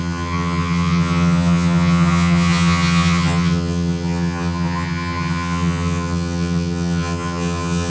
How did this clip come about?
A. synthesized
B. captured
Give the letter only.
A